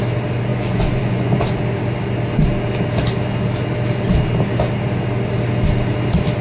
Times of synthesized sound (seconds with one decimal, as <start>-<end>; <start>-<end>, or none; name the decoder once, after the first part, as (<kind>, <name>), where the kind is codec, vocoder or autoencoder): 0.5-1.4 (vocoder, Vocos)